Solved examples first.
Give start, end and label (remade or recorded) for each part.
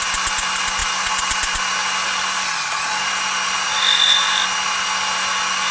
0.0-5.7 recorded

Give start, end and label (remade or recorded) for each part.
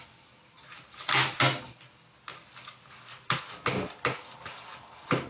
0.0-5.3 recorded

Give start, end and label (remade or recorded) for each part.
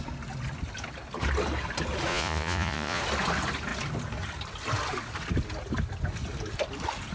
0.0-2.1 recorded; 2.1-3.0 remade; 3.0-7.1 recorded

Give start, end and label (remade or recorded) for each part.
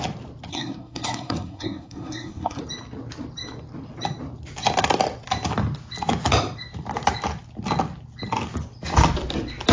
0.0-0.5 recorded; 0.5-2.6 remade; 2.6-9.7 recorded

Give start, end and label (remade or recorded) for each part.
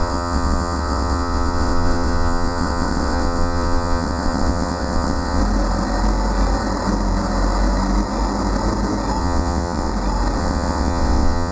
0.0-5.4 remade; 5.4-9.2 recorded; 9.2-9.9 remade; 9.9-10.4 recorded; 10.4-11.5 remade